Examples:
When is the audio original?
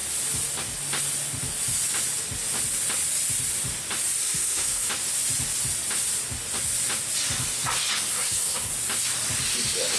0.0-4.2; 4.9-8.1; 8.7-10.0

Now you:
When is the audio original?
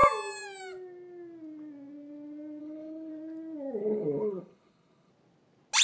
0.0-2.6; 3.1-3.8; 5.1-5.8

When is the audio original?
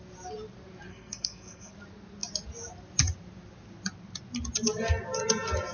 0.0-0.9; 1.7-5.7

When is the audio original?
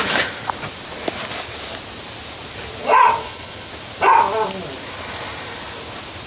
0.0-3.2; 3.7-6.3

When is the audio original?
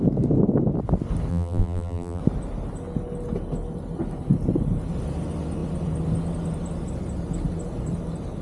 0.0-1.3; 2.2-8.4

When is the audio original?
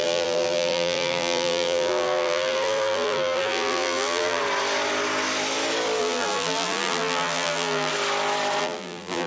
4.4-6.0; 7.9-8.6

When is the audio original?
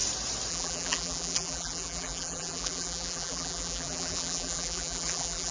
0.0-0.5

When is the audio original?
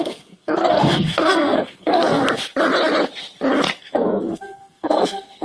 2.2-3.8